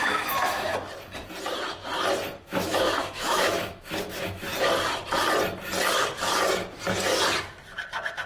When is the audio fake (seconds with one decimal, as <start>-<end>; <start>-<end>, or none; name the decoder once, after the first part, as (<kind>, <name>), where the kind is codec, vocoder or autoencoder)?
0.0-0.7 (autoencoder, DAC-VAE); 2.4-4.5